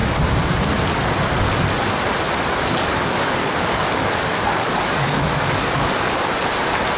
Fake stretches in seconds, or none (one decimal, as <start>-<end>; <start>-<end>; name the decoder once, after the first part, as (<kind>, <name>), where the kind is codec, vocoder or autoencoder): 2.7-6.3 (codec, DAC)